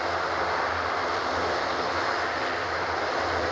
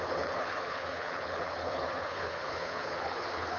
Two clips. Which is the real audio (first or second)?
first